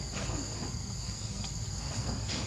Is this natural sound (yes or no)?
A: no